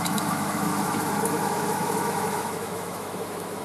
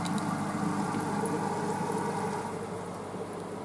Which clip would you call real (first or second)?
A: second